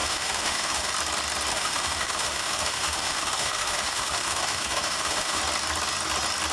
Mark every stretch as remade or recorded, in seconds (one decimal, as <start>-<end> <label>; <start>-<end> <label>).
0.0-0.9 remade; 0.9-1.5 recorded; 1.5-5.4 remade; 5.4-6.5 recorded